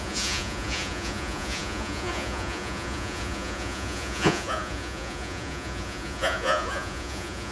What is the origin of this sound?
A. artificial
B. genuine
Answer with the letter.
A